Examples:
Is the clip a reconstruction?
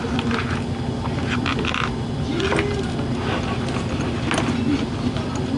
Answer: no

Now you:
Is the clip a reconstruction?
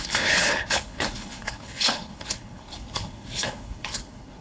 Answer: yes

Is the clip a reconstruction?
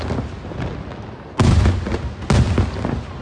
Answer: no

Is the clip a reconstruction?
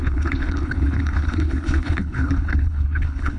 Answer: yes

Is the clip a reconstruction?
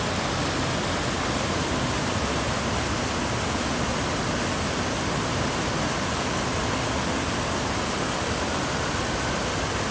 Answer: no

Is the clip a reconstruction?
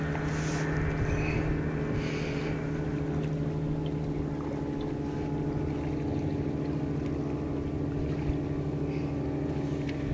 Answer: no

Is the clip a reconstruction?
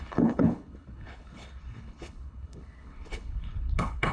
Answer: yes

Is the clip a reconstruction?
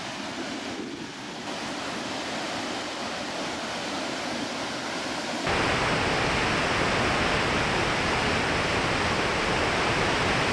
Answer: no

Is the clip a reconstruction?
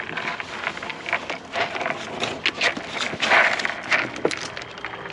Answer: no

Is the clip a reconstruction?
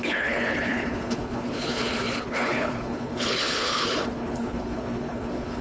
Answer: yes